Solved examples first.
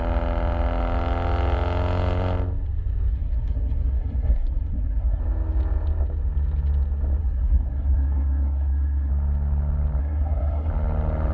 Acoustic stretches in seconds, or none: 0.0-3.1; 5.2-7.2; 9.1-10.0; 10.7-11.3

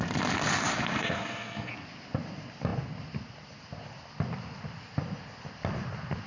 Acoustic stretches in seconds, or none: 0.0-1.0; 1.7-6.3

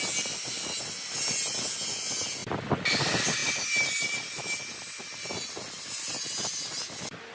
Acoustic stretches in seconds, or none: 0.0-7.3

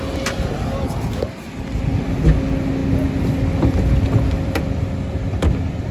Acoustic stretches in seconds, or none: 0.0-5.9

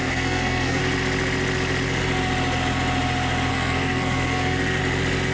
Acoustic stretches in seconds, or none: 0.8-3.5; 4.8-5.3